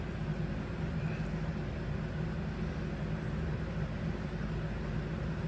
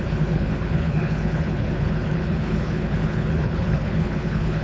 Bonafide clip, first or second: first